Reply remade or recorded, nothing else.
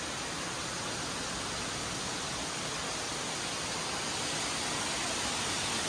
recorded